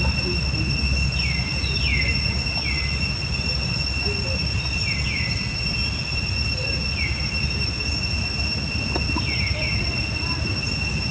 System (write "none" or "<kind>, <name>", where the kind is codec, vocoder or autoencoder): none